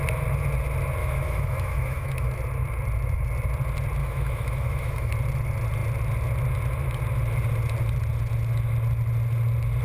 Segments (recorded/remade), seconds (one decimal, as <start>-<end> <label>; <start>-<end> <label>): 0.0-1.0 recorded; 1.0-2.3 remade; 2.3-4.0 recorded; 4.0-5.1 remade; 5.1-9.8 recorded